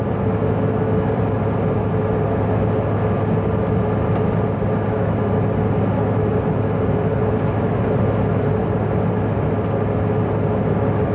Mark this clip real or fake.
real